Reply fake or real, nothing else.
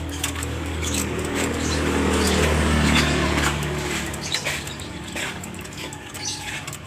fake